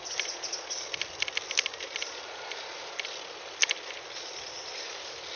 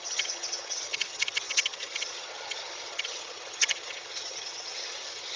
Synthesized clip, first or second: second